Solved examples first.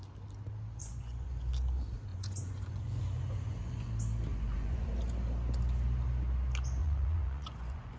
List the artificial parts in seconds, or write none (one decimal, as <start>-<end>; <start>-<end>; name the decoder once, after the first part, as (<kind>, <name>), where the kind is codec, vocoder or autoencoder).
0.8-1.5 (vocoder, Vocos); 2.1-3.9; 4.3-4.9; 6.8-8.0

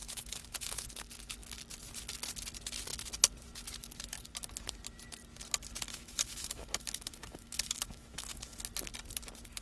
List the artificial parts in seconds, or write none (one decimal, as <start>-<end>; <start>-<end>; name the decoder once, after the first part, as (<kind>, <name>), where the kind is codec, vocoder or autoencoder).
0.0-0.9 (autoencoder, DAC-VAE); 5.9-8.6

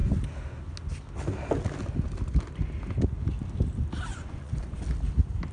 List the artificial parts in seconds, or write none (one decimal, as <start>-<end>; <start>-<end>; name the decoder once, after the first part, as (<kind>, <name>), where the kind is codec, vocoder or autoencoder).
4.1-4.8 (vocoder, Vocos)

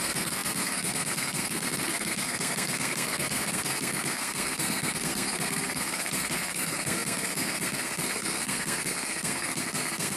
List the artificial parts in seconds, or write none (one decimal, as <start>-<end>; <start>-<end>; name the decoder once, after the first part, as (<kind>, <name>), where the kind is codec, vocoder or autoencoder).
0.0-10.2 (codec, SNAC)

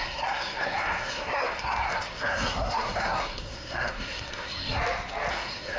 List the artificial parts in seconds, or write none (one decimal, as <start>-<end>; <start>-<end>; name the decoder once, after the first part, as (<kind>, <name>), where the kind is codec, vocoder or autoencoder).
0.0-4.8 (codec, SNAC); 5.3-5.8